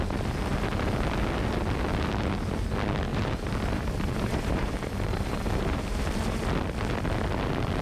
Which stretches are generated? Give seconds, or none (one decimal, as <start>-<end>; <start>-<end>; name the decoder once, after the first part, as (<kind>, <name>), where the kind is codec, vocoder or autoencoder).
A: 3.1-6.4 (vocoder, BigVGAN v2)